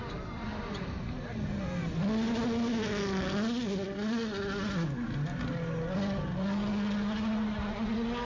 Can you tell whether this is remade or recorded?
recorded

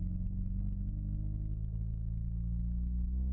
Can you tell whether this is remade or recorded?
recorded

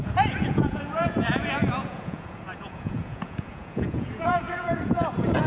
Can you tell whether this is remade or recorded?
remade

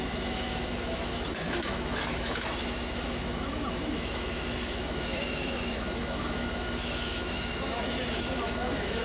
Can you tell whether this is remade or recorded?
remade